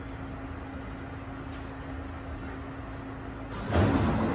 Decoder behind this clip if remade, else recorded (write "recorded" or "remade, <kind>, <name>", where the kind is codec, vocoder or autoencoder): recorded